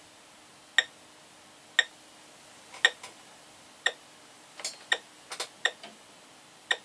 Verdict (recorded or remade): recorded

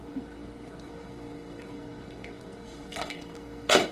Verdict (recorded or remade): remade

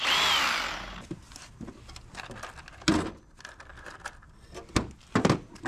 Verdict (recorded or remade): recorded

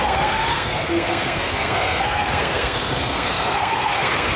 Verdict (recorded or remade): remade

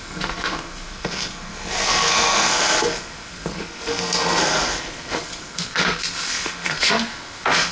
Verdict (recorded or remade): remade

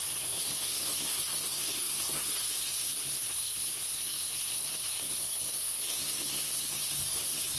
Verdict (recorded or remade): remade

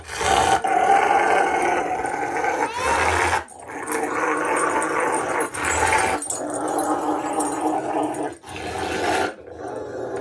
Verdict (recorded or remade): recorded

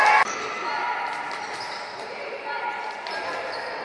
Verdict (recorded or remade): recorded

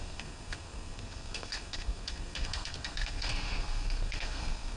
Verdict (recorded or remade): remade